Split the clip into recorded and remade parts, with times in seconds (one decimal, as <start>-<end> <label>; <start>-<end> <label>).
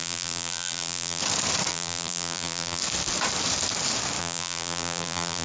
0.0-1.2 remade; 1.2-1.7 recorded; 1.7-2.8 remade; 2.8-4.2 recorded; 4.2-5.4 remade